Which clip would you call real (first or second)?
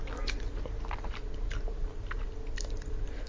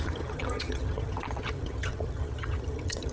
first